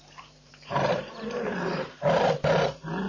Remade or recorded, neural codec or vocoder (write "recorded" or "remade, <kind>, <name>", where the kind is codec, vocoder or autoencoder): remade, vocoder, BigVGAN v2